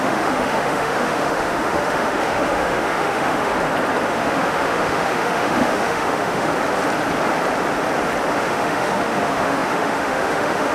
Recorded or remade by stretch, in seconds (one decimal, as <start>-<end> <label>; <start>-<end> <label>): 0.0-3.5 remade; 3.5-4.1 recorded; 4.1-6.5 remade; 6.5-8.3 recorded; 8.3-10.7 remade